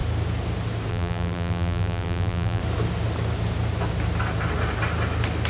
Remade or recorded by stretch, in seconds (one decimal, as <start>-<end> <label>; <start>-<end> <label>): 0.0-0.9 recorded; 0.9-2.6 remade; 2.6-5.5 recorded